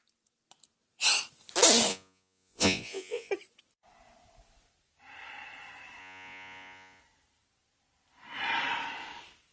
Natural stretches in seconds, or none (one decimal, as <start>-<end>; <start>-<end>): 0.0-1.9; 3.3-6.0; 7.0-9.5